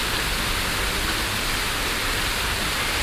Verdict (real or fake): real